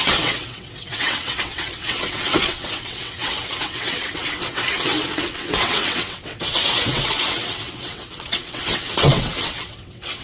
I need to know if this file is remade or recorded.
remade